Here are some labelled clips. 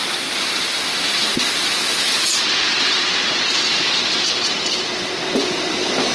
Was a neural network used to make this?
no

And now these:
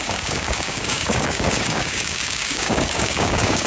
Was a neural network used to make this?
yes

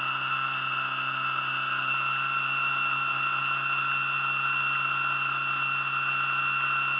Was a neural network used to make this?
no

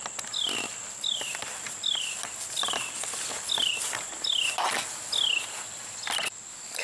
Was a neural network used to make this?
no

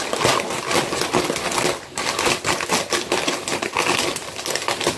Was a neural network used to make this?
no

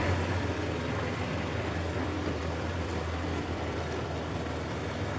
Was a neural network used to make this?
yes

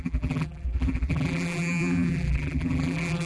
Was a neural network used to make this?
yes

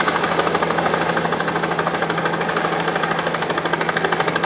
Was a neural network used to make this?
no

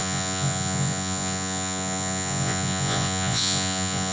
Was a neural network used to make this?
yes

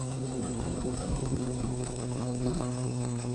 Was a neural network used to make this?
yes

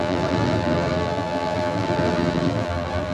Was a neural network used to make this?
yes